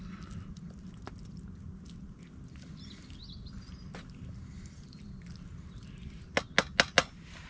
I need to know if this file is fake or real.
real